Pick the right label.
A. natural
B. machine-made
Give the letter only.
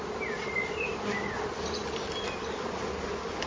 A